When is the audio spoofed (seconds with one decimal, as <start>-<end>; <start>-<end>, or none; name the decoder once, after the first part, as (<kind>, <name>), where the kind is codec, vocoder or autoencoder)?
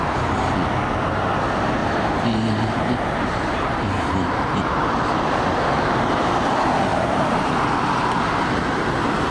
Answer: 1.8-6.5 (vocoder, BigVGAN v2); 6.9-7.7